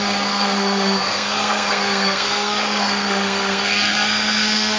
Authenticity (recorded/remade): remade